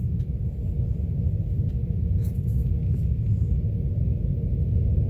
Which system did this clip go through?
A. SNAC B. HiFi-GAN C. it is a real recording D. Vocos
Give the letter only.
C